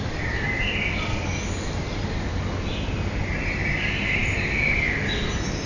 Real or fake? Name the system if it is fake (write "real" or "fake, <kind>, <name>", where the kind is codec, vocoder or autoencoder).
real